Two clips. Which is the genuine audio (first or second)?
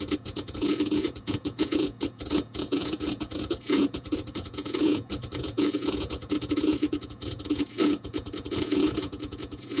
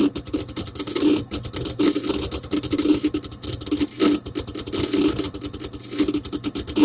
second